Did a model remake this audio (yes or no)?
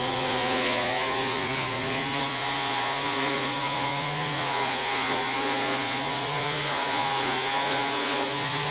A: yes